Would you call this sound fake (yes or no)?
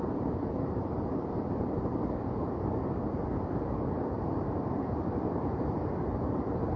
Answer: yes